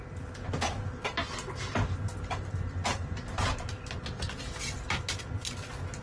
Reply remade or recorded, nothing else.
recorded